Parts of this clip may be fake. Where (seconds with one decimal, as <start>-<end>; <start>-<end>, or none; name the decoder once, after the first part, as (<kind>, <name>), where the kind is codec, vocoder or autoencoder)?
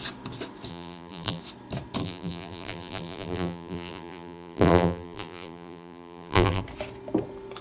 0.7-1.4 (vocoder, BigVGAN v2); 2.0-6.6